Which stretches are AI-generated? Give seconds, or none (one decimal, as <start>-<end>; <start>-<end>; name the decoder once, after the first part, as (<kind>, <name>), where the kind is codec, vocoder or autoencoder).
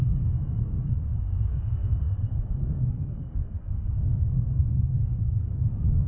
0.0-6.1 (codec, SNAC)